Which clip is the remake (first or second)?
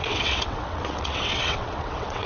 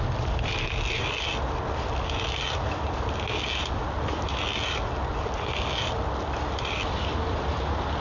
first